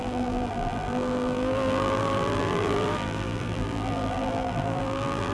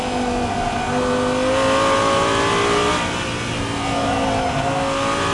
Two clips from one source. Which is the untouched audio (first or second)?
second